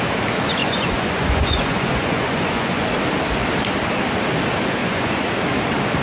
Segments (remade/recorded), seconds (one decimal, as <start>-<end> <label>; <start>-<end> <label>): 0.0-0.6 recorded; 0.6-2.9 remade; 2.9-4.8 recorded; 4.8-5.3 remade; 5.3-6.0 recorded